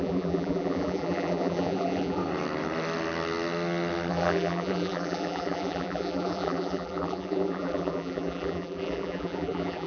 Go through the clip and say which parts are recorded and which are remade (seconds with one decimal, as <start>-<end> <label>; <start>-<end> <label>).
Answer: 0.0-2.2 remade; 2.2-4.1 recorded; 4.1-9.9 remade